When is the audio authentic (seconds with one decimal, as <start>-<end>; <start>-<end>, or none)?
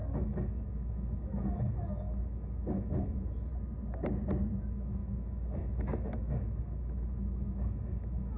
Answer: 3.5-4.6